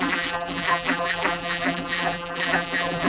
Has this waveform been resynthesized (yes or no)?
yes